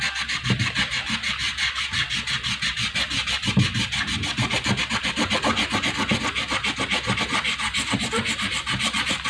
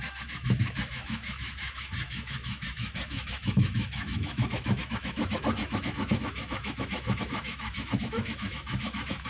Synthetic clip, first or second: second